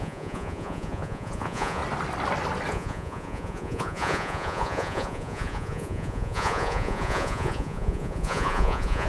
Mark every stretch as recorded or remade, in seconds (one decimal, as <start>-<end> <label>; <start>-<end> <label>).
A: 0.0-1.8 remade; 1.8-2.7 recorded; 2.7-9.1 remade